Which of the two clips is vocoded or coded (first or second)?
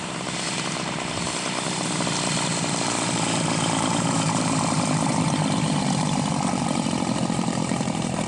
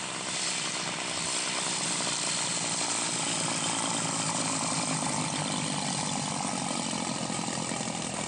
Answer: first